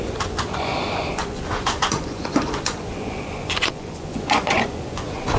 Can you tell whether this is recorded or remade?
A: remade